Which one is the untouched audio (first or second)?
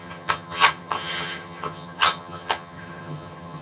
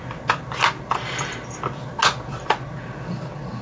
second